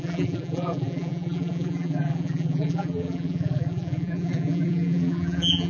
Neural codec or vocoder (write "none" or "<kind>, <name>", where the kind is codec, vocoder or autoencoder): vocoder, BigVGAN v2